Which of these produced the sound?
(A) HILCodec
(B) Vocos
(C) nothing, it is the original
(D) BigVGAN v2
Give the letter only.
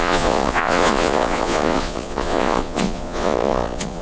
B